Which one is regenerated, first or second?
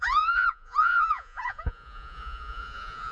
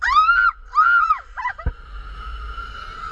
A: first